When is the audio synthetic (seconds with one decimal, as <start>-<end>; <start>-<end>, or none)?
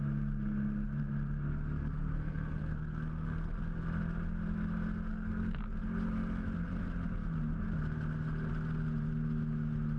1.8-3.6; 5.1-5.6